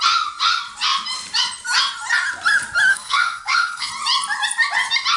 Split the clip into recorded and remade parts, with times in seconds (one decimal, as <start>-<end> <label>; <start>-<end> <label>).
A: 0.0-2.9 recorded; 2.9-3.9 remade; 3.9-5.2 recorded